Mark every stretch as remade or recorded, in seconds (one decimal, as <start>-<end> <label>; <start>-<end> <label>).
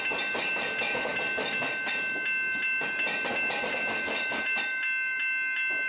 0.0-3.9 recorded; 3.9-4.4 remade; 4.4-5.9 recorded